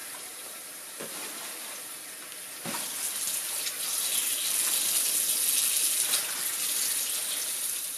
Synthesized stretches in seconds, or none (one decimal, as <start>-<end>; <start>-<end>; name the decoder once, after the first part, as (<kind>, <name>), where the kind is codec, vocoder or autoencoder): 0.0-1.7 (vocoder, BigVGAN v2)